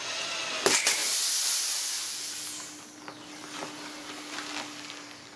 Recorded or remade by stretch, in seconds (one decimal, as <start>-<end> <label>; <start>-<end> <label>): 0.0-5.4 recorded